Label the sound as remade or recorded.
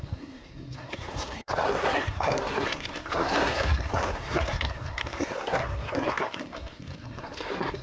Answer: remade